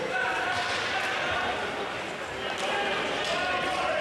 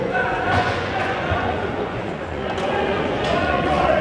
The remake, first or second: second